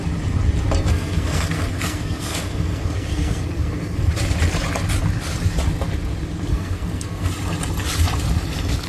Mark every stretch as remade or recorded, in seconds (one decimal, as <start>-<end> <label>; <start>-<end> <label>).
0.0-0.9 recorded; 0.9-4.1 remade; 4.1-6.5 recorded; 6.5-7.3 remade; 7.3-8.9 recorded